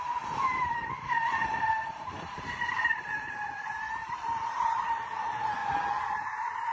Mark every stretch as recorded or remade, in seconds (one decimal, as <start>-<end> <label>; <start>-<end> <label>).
0.0-5.6 remade; 5.6-6.7 recorded